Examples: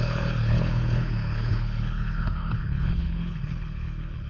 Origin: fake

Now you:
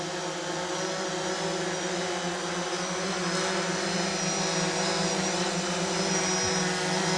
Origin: real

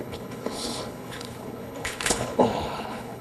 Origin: fake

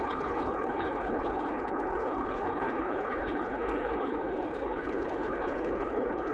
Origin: fake